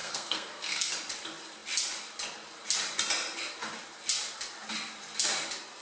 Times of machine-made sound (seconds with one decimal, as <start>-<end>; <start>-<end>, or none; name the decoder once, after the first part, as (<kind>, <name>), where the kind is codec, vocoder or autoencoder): 0.0-0.9 (codec, SNAC)